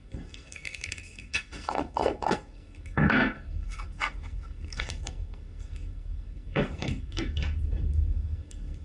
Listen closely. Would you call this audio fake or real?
fake